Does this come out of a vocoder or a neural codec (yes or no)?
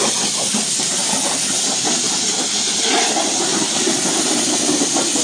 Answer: no